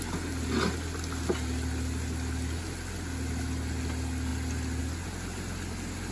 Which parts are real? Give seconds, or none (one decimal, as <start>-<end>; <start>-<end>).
0.0-6.1